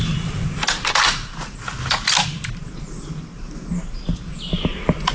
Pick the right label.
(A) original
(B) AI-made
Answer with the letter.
A